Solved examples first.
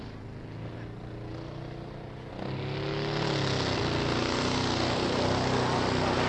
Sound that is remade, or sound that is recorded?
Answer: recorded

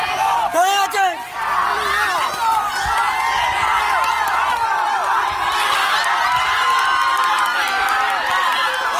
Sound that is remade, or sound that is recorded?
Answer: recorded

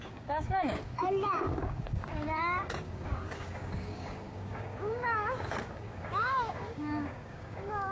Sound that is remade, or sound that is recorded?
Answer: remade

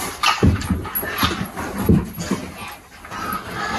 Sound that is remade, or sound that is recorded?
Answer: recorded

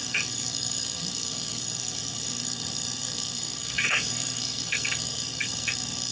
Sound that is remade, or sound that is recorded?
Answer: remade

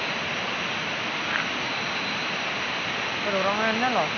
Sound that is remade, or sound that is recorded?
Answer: recorded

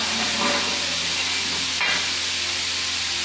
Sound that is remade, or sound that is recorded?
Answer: recorded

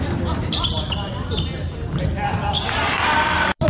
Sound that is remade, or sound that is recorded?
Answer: remade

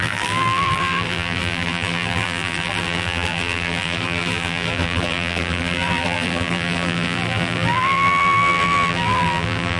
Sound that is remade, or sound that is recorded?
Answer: remade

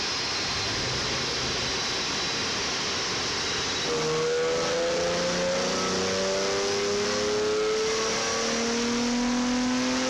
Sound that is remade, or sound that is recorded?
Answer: recorded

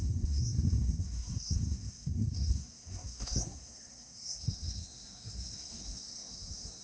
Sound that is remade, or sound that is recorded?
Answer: remade